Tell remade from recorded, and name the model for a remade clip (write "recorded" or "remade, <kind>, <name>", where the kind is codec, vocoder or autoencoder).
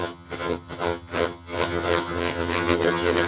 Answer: remade, vocoder, HiFi-GAN